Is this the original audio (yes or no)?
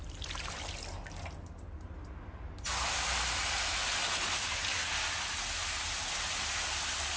yes